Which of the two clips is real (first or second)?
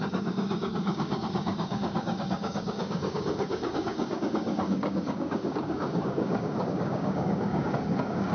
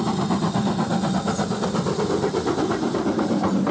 second